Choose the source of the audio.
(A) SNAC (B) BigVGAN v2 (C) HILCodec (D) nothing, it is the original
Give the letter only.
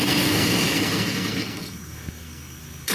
A